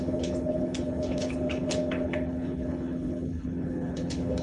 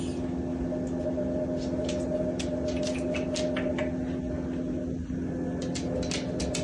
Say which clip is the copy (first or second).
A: first